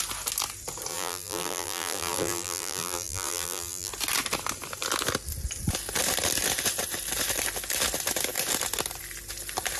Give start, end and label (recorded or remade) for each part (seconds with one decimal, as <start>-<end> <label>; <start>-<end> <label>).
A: 0.0-0.9 recorded; 0.9-3.9 remade; 3.9-9.8 recorded